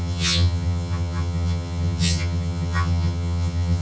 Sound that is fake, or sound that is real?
fake